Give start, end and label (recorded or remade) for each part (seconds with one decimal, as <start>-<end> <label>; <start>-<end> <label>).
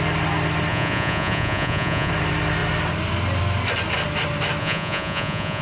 0.0-0.7 recorded; 0.7-2.1 remade; 2.1-4.6 recorded; 4.6-5.6 remade